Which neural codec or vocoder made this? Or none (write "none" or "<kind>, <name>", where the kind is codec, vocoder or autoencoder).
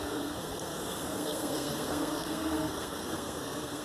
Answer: codec, SNAC